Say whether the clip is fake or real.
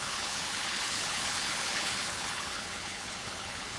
fake